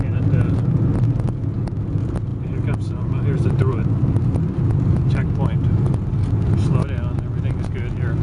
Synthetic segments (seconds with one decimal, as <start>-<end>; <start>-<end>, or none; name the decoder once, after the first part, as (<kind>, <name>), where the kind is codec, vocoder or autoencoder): none